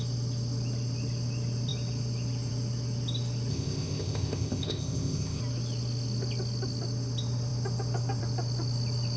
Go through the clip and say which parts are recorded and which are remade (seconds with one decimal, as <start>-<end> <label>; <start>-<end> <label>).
0.0-3.5 recorded; 3.5-5.4 remade; 5.4-9.2 recorded